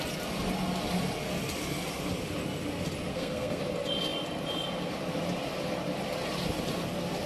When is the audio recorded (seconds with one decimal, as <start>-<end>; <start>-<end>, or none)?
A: 0.0-3.1; 3.6-7.3